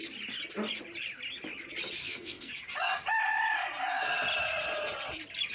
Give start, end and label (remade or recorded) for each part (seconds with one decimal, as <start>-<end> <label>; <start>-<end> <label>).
0.0-2.0 recorded; 2.0-2.5 remade; 2.5-5.5 recorded

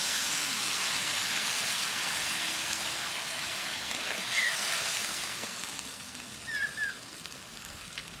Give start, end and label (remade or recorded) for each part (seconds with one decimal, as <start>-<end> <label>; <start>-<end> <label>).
0.0-6.3 remade; 6.3-6.9 recorded; 6.9-8.2 remade

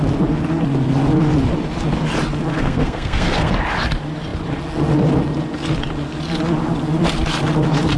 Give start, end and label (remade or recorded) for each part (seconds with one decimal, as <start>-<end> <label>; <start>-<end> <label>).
0.0-2.5 recorded; 2.5-3.5 remade; 3.5-8.0 recorded

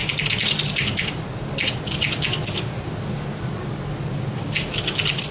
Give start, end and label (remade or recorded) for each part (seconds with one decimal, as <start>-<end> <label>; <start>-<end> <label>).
0.0-5.3 recorded